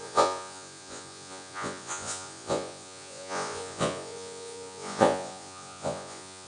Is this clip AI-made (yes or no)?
yes